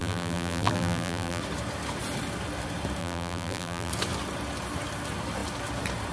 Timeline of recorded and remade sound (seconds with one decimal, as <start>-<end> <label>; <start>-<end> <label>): 0.0-1.4 remade; 1.4-3.0 recorded; 3.0-3.9 remade; 3.9-6.1 recorded